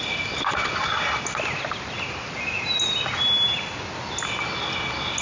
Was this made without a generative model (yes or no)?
yes